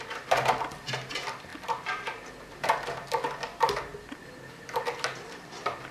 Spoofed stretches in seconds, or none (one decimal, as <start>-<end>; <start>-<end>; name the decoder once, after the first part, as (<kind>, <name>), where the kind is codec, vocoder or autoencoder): none